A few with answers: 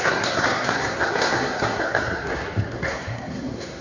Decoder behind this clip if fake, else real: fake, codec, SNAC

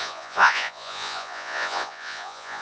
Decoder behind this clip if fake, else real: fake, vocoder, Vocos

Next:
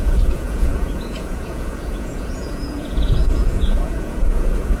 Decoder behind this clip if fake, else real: fake, vocoder, Vocos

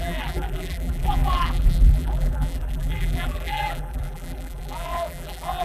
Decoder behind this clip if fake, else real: fake, vocoder, BigVGAN v2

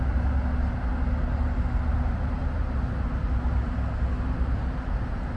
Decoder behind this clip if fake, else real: real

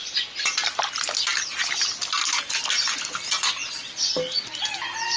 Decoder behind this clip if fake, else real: real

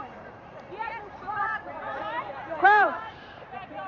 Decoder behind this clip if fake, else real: fake, vocoder, BigVGAN v2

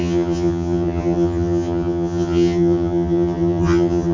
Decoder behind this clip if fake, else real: fake, vocoder, HiFi-GAN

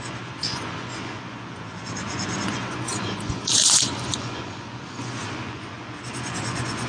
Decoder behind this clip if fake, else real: fake, vocoder, Vocos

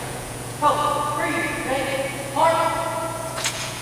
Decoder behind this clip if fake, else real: fake, vocoder, Vocos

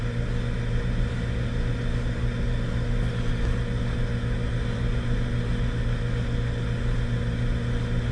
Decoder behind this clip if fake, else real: real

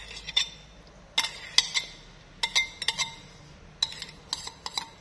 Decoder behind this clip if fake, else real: real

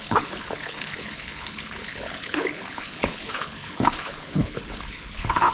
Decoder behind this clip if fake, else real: fake, codec, HILCodec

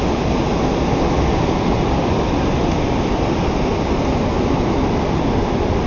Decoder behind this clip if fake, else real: real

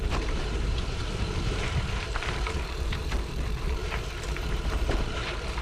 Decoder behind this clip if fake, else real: fake, vocoder, BigVGAN v2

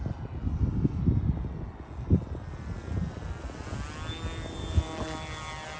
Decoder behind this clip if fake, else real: real